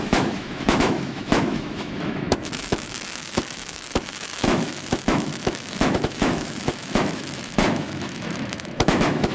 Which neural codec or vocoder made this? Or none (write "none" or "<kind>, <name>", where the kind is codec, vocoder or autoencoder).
autoencoder, DAC-VAE